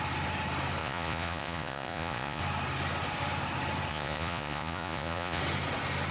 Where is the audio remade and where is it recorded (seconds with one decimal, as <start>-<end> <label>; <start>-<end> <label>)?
0.0-0.8 recorded; 0.8-2.4 remade; 2.4-3.9 recorded; 3.9-5.4 remade; 5.4-6.1 recorded